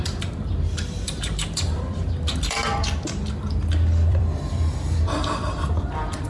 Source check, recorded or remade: remade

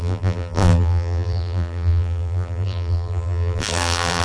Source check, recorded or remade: remade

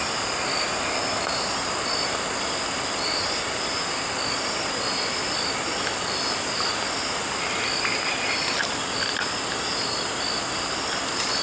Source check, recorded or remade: recorded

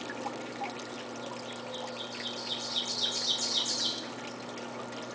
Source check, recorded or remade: recorded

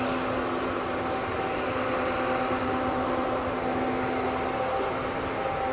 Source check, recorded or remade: recorded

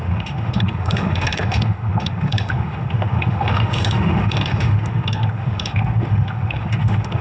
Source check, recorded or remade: remade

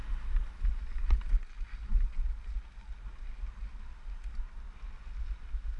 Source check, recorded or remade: recorded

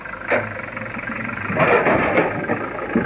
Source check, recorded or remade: recorded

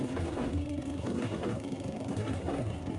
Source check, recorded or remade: remade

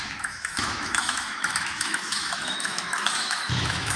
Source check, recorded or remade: remade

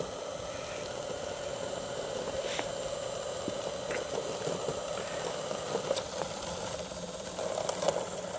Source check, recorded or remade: recorded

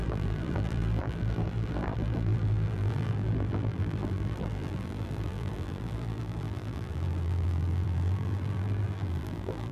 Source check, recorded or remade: remade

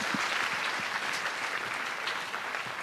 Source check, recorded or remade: recorded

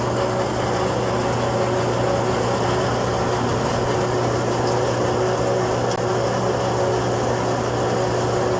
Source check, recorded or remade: recorded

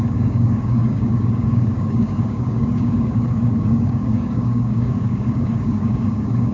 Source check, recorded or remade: remade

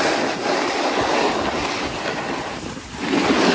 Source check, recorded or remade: recorded